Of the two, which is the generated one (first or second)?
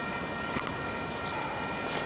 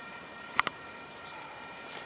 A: second